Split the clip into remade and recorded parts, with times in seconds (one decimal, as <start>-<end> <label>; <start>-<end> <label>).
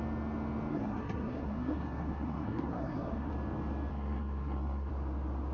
0.0-0.7 recorded; 0.7-3.3 remade; 3.3-3.9 recorded; 3.9-4.9 remade; 4.9-5.5 recorded